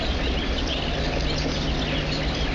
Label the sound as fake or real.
real